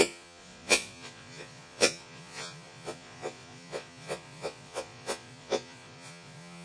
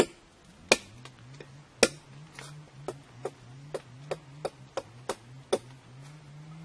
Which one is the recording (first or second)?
second